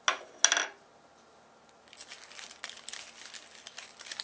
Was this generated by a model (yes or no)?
no